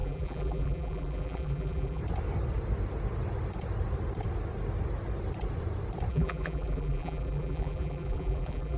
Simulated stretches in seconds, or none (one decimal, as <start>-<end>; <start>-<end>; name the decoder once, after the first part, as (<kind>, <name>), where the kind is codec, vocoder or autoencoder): 0.0-2.0 (vocoder, BigVGAN v2); 6.1-8.8